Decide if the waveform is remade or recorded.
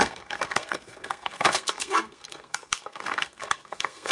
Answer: remade